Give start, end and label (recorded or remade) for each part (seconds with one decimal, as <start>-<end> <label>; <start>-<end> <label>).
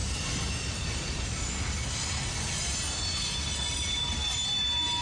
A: 0.0-5.0 recorded